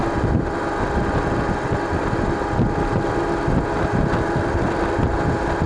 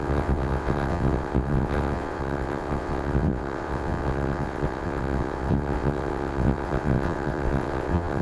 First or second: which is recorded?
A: first